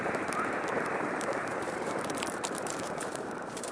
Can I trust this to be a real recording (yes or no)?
no